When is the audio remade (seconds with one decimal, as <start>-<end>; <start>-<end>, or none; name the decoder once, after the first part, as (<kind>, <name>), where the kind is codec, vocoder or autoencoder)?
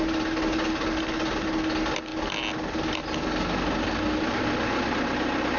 none